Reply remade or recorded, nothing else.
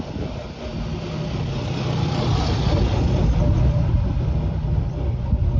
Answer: recorded